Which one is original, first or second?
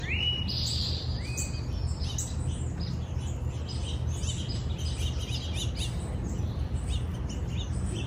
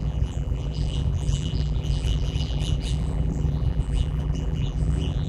first